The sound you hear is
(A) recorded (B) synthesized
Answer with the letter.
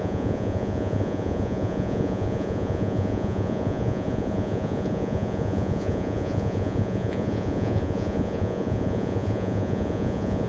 B